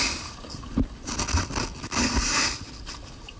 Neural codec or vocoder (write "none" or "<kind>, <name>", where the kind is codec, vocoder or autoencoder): none